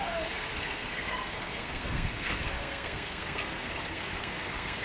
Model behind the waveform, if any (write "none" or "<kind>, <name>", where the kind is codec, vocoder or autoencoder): codec, SNAC